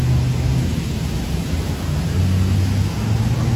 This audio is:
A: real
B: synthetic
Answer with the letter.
A